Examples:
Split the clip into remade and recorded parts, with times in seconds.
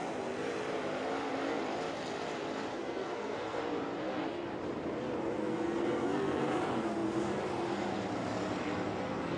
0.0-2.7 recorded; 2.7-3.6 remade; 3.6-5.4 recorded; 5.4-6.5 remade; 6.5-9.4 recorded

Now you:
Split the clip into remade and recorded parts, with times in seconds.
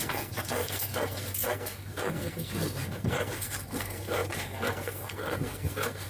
0.0-6.1 remade